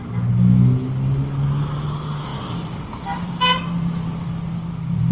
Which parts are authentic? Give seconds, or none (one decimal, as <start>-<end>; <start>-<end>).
0.0-5.1